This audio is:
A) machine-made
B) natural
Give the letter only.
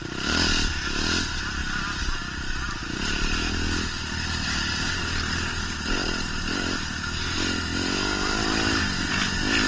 B